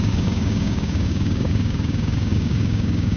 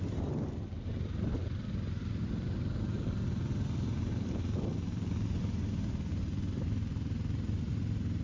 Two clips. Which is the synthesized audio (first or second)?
first